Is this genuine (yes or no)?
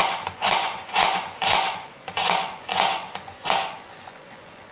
no